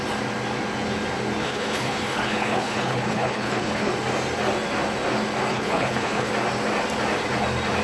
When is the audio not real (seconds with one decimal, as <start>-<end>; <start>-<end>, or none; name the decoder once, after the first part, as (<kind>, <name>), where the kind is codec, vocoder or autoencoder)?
1.4-3.9 (codec, HILCodec); 5.5-6.3